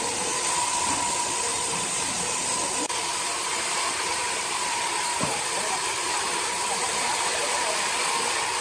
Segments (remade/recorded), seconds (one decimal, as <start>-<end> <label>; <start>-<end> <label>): 0.0-1.5 recorded; 1.5-2.1 remade; 2.1-3.1 recorded; 3.1-7.8 remade; 7.8-8.6 recorded